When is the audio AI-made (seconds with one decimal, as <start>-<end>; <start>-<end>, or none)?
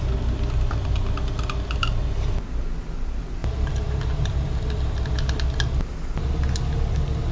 none